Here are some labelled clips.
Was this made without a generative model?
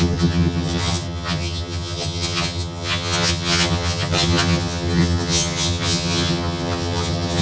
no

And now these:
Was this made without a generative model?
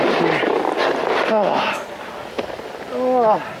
yes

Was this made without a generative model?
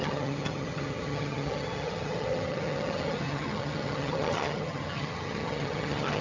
no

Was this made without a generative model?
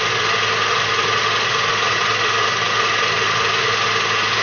yes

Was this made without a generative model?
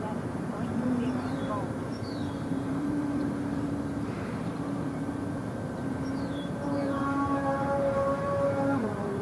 no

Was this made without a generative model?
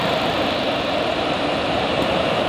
no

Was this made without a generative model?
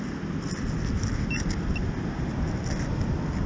yes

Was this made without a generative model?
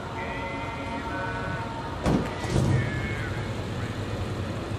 yes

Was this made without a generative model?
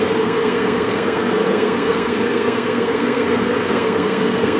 no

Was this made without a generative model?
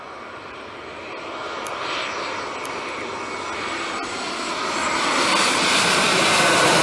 yes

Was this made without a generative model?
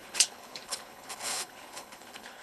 no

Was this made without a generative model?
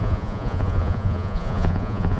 no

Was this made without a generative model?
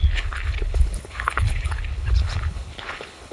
no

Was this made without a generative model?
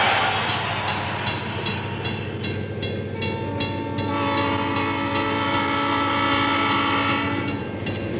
yes